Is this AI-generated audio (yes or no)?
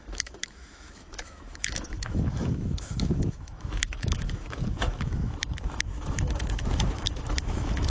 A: yes